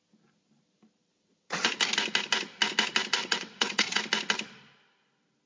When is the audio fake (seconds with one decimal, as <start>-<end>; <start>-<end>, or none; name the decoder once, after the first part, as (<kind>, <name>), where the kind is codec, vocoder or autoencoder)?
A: 1.0-1.7 (vocoder, WaveNeXt); 3.2-4.0